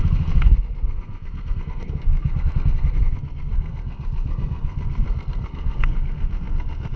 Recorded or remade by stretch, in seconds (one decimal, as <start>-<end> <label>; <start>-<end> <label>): 0.0-7.0 remade